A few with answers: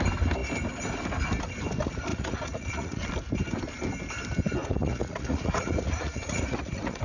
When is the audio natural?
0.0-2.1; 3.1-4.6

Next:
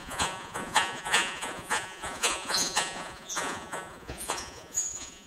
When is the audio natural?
none

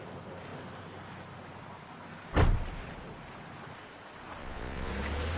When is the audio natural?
0.0-4.4; 4.9-5.4

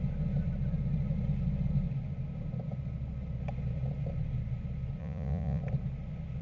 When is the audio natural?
0.0-5.0; 5.6-6.4

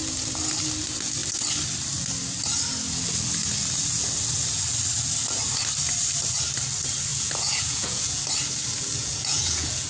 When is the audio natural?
0.0-7.1; 8.2-9.0

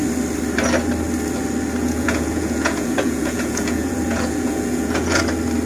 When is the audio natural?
0.0-1.8; 5.2-5.7

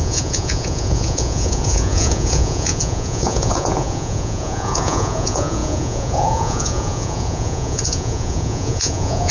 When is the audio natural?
none